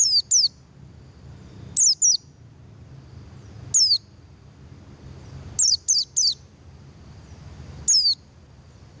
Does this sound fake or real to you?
real